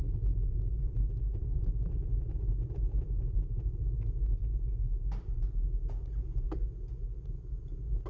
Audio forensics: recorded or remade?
recorded